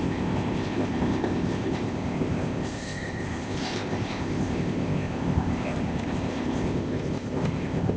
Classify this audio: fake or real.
fake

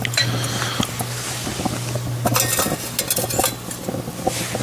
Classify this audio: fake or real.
real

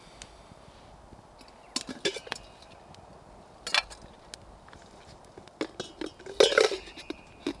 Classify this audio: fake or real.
real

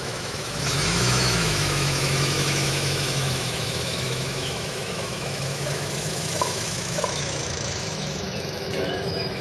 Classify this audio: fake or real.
fake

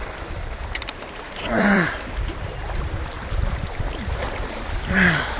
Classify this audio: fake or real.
fake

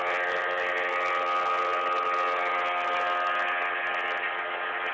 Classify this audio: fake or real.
real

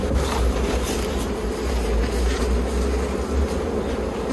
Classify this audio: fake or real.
real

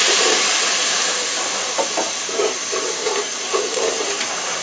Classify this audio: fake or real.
fake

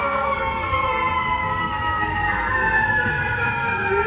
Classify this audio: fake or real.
fake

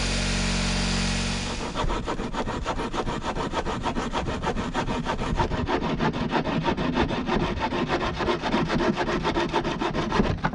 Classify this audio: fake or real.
real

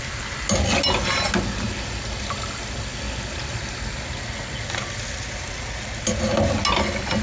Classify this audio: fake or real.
real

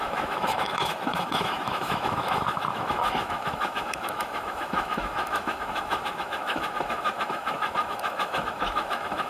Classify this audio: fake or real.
fake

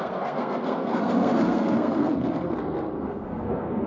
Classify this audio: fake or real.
fake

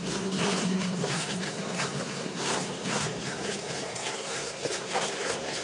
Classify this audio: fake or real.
fake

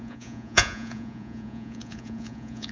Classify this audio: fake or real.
fake